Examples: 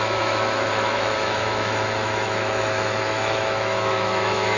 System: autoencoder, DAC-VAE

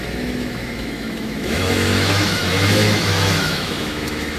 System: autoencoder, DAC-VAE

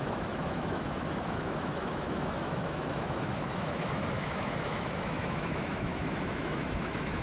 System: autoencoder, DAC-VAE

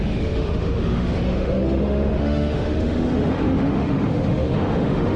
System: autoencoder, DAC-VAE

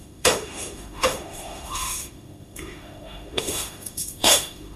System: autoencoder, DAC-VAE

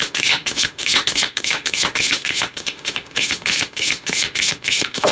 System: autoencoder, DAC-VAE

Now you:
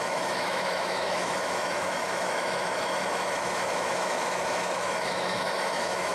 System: autoencoder, DAC-VAE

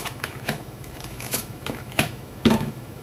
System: autoencoder, DAC-VAE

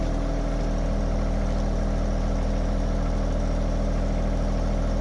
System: none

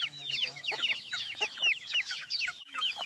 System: autoencoder, DAC-VAE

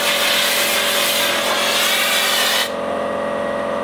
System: none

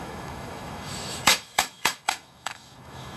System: autoencoder, DAC-VAE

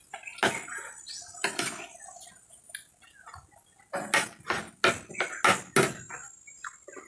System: none